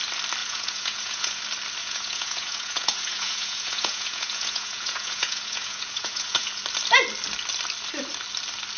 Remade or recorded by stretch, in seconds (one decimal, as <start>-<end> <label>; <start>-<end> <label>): 0.0-0.4 recorded; 0.4-1.4 remade; 1.4-1.8 recorded; 1.8-6.6 remade; 6.6-8.8 recorded